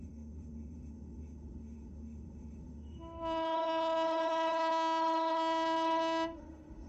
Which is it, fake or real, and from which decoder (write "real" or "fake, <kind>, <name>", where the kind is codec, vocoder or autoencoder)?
fake, autoencoder, DAC-VAE